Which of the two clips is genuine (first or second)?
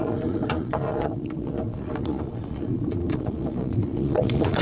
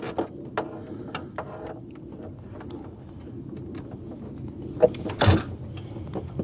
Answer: second